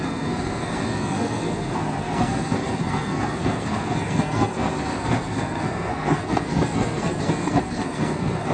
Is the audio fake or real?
fake